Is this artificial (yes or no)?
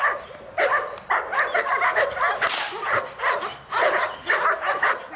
no